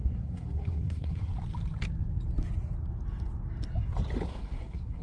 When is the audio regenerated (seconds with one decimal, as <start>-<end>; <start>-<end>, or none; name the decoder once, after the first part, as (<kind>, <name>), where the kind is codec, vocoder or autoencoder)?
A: 0.0-1.3 (codec, SNAC); 4.3-5.0